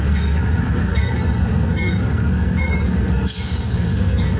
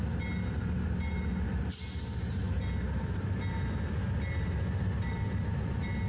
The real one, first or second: second